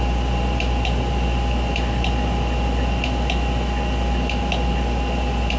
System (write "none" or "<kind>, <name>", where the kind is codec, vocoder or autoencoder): none